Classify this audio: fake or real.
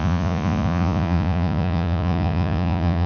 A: fake